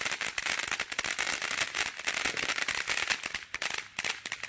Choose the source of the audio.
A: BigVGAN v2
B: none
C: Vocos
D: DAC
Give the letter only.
B